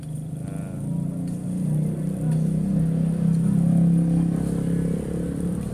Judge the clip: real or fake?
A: real